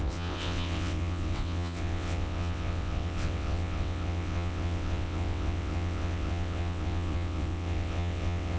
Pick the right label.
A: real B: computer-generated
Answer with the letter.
B